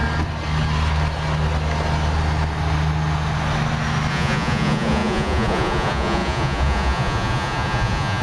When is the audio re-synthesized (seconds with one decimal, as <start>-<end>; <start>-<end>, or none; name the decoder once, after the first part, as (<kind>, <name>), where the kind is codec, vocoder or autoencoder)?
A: 4.1-8.2 (vocoder, Vocos)